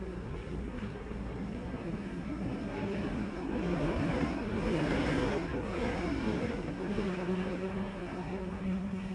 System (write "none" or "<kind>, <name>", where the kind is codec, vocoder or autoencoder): codec, SNAC